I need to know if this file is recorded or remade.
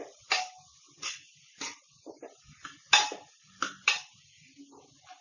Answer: recorded